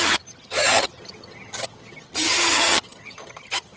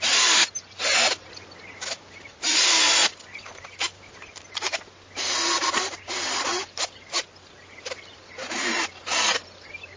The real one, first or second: second